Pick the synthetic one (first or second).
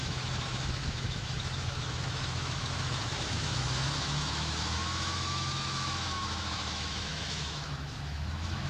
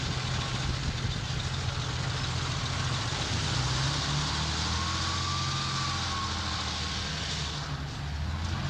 first